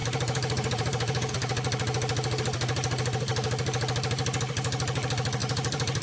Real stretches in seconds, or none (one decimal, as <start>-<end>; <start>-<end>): 1.3-5.4